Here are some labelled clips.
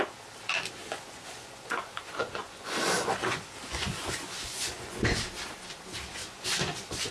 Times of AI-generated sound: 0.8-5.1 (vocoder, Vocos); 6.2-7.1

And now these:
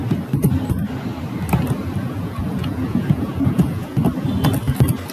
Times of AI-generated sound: 2.0-4.0 (vocoder, Vocos)

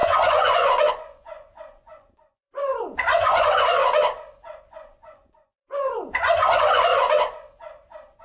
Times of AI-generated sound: 0.0-3.8 (vocoder, Vocos); 4.6-6.9

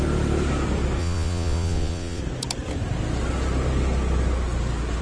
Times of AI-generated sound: 1.0-2.2 (vocoder, Vocos)

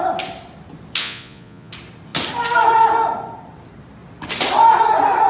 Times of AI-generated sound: 1.0-1.7 (vocoder, Vocos)